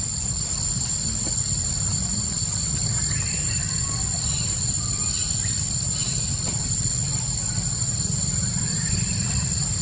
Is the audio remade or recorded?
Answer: remade